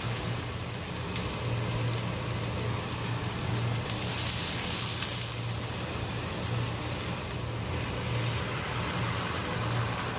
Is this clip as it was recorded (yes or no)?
yes